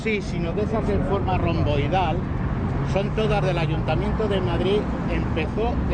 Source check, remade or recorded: recorded